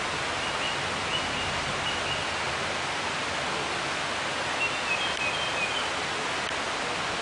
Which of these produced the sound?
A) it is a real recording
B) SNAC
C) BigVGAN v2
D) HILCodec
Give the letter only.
A